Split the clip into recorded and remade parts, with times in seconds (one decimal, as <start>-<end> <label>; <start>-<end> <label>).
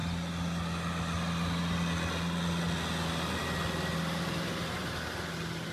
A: 0.0-5.7 recorded